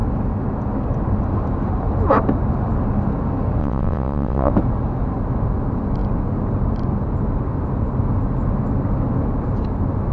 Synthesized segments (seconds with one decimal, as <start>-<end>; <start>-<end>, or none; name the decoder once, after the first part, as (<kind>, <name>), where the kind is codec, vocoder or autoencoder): 3.6-4.5 (vocoder, WaveNeXt)